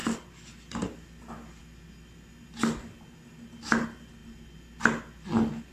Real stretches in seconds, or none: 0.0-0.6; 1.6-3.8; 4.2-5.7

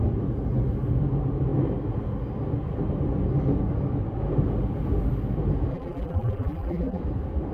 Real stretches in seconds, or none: 0.0-5.7; 7.0-7.5

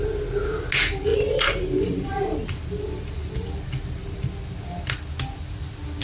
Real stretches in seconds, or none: 0.0-1.1; 2.4-6.0

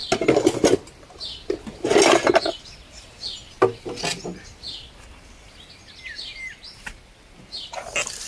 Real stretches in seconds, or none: 0.0-8.3

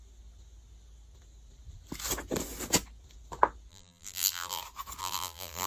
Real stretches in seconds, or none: 0.0-3.7; 4.6-5.0

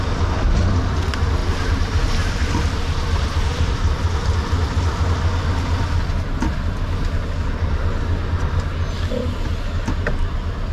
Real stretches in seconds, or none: 0.0-1.4; 3.9-10.7

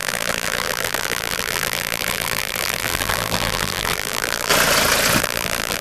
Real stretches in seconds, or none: 4.5-5.2